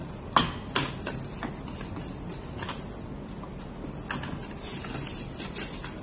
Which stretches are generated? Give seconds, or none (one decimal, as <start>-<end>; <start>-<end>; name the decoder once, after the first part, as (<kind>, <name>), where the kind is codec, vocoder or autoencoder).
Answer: none